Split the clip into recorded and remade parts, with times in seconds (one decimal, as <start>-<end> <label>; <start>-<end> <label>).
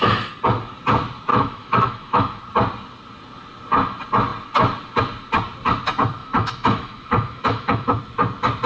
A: 0.0-1.3 recorded; 1.3-2.4 remade; 2.4-6.2 recorded; 6.2-8.0 remade; 8.0-8.7 recorded